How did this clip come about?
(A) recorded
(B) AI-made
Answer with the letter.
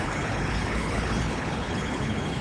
B